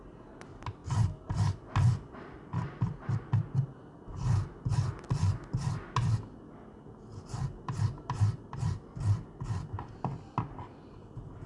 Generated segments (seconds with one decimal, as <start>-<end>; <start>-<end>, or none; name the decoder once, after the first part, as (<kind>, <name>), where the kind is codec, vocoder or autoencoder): none

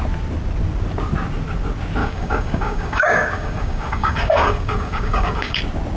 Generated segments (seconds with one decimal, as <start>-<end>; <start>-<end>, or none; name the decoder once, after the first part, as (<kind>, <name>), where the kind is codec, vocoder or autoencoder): 2.0-5.6 (codec, DAC)

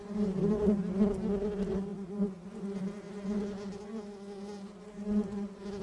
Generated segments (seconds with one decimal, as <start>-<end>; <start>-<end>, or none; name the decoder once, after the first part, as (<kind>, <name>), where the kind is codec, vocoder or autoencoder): none

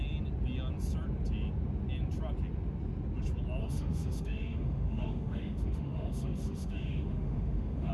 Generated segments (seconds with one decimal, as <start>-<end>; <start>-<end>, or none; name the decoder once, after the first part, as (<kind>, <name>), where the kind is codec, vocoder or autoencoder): 3.6-7.9 (autoencoder, DAC-VAE)

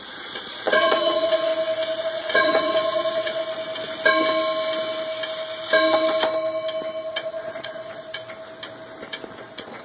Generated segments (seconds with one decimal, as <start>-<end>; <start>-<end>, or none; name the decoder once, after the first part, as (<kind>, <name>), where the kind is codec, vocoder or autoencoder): 0.0-1.5 (vocoder, Vocos); 2.0-3.4; 7.1-8.2; 9.4-9.8

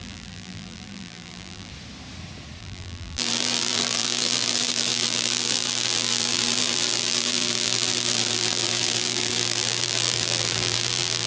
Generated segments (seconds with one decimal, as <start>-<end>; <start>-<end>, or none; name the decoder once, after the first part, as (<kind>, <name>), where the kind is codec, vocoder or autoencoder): 0.0-1.7 (vocoder, BigVGAN v2); 2.6-11.3

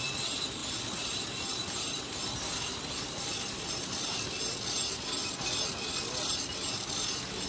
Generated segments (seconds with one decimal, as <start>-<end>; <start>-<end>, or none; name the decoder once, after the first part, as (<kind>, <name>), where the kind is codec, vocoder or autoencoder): none

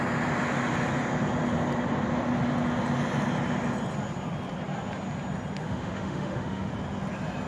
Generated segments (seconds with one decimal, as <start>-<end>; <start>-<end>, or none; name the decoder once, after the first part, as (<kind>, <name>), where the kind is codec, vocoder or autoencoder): 5.6-6.7 (autoencoder, DAC-VAE)